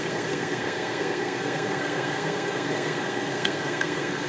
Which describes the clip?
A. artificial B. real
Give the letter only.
A